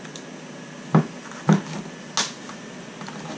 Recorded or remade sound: recorded